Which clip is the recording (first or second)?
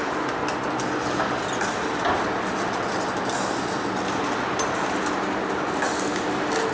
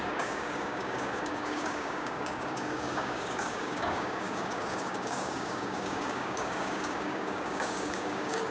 first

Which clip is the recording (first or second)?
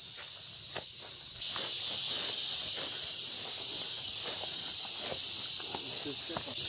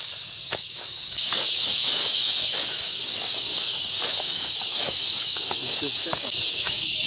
first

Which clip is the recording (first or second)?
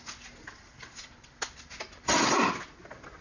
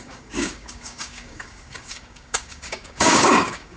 first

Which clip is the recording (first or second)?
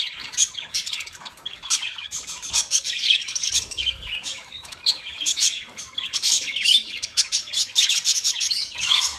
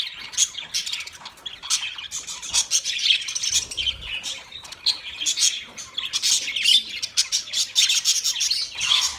second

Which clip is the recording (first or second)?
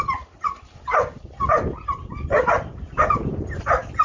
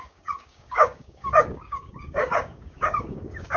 first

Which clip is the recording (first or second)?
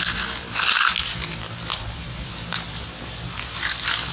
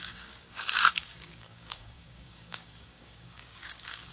first